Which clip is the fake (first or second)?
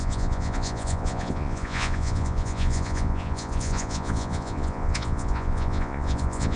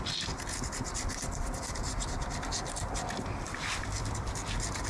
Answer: first